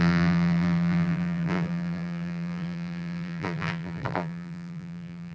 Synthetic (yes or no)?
yes